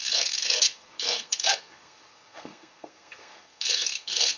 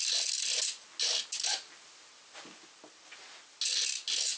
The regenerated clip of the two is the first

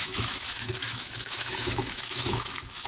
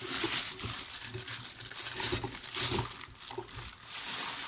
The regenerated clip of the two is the first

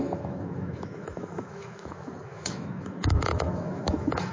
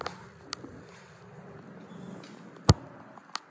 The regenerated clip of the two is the first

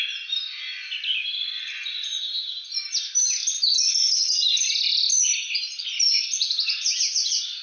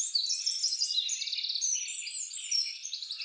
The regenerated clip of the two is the second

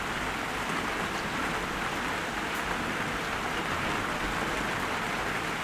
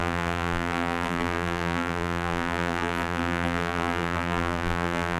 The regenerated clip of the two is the second